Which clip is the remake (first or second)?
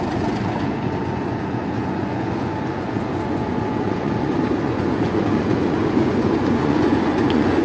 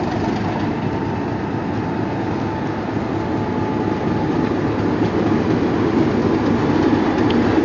first